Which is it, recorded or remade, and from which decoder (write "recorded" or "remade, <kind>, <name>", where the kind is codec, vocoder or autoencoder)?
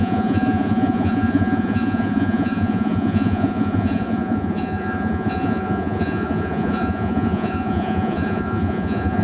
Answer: remade, vocoder, Vocos